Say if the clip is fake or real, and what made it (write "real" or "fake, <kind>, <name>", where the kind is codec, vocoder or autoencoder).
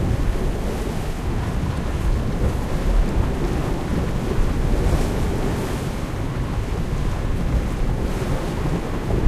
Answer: real